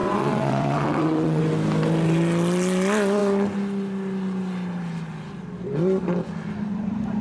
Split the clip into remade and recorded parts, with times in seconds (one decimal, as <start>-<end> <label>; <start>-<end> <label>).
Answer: 0.0-1.4 remade; 1.4-7.2 recorded